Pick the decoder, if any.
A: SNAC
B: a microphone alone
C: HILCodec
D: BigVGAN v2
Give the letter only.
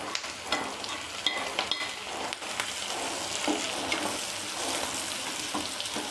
B